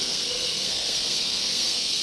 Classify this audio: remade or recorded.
remade